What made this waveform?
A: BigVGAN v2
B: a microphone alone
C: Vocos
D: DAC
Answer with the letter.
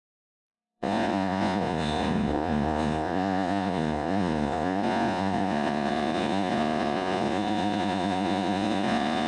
C